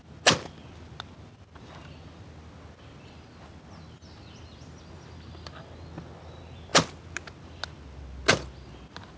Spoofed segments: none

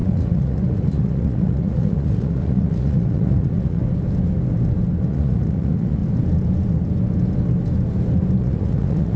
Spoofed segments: 0.0-3.8 (vocoder, Vocos); 5.1-6.0; 8.4-9.2

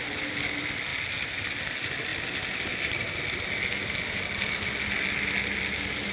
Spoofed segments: none

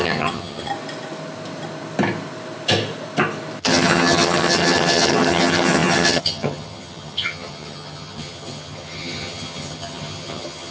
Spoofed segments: 0.0-0.7 (vocoder, HiFi-GAN); 3.6-10.7

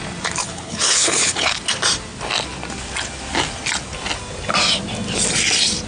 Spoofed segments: 0.4-1.6 (codec, HILCodec)

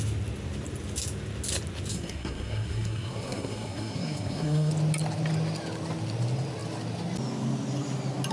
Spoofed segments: 1.9-4.7 (codec, SNAC)

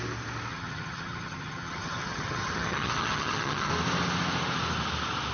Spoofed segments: 0.5-3.7 (vocoder, HiFi-GAN)